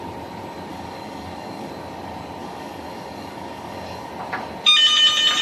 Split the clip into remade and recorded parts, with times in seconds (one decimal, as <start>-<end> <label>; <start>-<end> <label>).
0.0-0.7 recorded; 0.7-1.7 remade; 1.7-2.4 recorded; 2.4-4.1 remade; 4.1-5.4 recorded